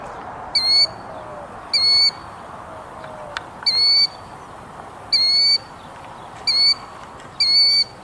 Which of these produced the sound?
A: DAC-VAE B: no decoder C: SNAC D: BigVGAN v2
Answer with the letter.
B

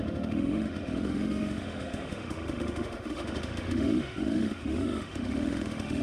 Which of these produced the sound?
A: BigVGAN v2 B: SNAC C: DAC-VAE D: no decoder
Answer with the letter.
C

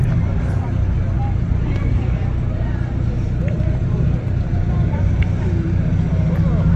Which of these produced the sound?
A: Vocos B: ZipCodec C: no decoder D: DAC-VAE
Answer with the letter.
C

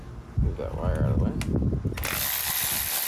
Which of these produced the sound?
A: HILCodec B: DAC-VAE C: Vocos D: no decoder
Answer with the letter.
D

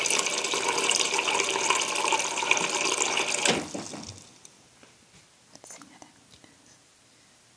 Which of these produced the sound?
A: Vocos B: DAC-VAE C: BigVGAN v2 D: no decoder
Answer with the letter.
D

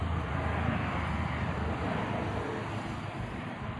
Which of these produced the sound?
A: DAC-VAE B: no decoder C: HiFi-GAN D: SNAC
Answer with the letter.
B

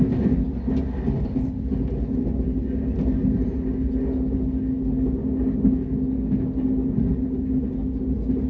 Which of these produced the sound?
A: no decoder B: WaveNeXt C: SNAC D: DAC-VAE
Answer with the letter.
A